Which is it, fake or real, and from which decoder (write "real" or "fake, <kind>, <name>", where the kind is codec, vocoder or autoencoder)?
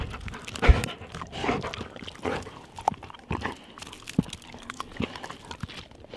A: real